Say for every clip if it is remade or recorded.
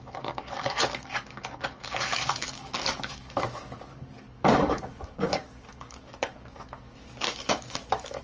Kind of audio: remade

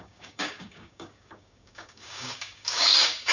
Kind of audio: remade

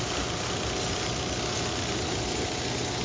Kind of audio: recorded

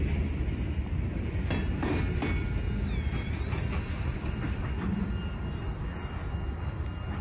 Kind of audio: recorded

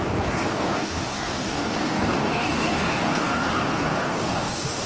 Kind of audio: remade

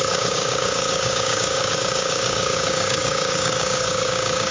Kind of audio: remade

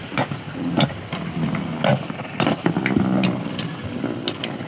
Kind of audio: recorded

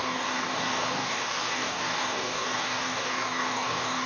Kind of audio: remade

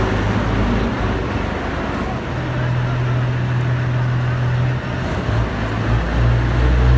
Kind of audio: recorded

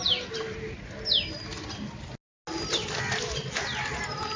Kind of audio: recorded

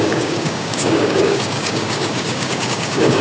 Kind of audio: remade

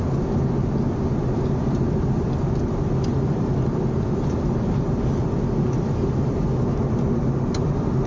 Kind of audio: recorded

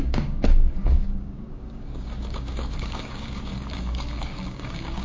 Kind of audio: remade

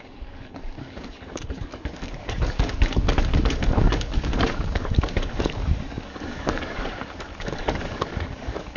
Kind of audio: remade